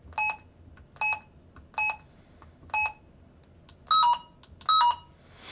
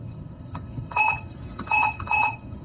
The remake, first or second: second